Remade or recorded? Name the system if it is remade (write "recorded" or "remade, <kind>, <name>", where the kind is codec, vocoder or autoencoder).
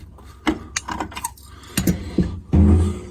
recorded